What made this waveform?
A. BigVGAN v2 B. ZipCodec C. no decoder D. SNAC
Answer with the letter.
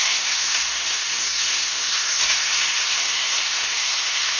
D